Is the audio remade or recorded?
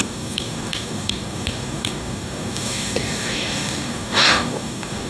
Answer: remade